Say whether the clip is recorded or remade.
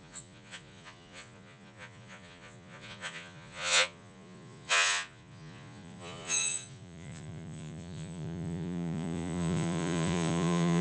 remade